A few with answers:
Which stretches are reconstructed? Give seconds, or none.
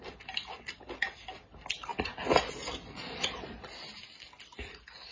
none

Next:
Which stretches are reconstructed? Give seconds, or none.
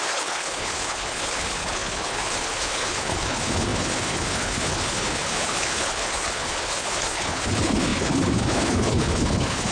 0.0-9.7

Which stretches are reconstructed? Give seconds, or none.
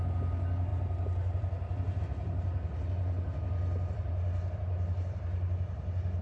none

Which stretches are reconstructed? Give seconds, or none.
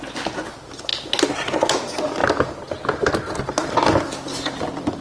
none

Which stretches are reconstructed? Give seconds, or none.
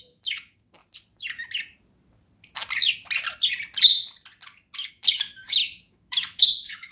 0.0-0.8; 4.9-6.9